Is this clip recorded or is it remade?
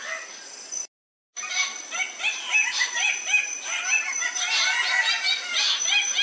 recorded